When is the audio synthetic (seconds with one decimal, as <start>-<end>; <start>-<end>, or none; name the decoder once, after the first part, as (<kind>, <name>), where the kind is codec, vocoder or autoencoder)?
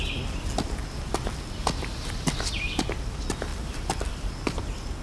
0.8-1.3 (vocoder, BigVGAN v2)